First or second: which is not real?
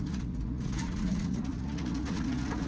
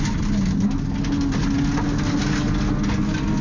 first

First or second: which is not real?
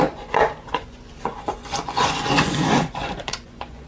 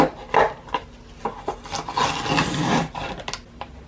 first